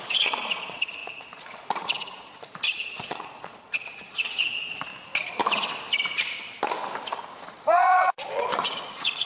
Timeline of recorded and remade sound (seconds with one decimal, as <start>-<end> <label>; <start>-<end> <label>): 0.0-4.9 remade; 4.9-7.4 recorded; 7.4-9.2 remade